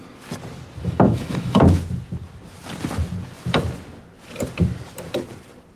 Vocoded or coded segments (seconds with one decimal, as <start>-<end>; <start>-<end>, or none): 0.8-1.6